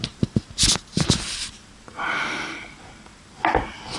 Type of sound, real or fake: real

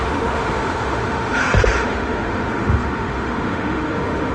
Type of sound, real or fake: fake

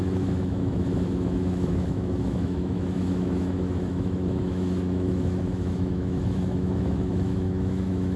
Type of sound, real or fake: fake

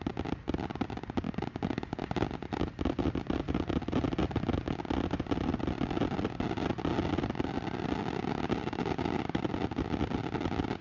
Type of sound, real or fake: real